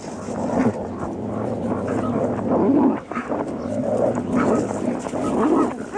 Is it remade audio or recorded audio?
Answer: recorded